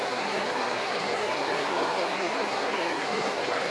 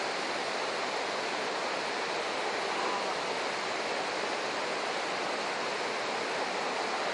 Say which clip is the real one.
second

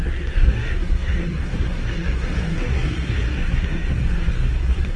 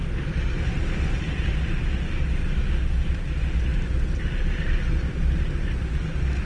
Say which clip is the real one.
second